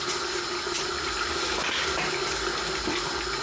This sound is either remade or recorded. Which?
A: recorded